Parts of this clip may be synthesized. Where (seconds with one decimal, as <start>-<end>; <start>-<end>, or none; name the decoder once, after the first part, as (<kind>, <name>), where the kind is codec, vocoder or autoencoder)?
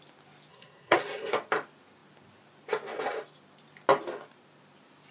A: 0.5-1.3 (codec, SNAC)